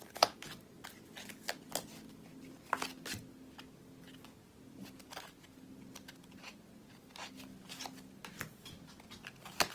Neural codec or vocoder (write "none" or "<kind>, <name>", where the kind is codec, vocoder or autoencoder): none